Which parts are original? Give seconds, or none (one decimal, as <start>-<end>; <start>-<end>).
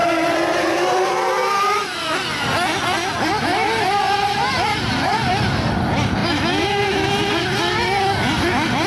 1.1-8.9